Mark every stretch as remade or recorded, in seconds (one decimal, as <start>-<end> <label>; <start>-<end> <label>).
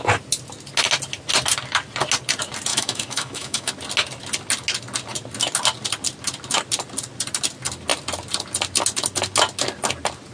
0.0-2.7 recorded; 2.7-3.7 remade; 3.7-10.3 recorded